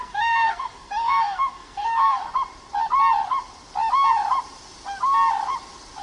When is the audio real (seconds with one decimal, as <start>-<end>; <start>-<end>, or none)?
2.2-6.0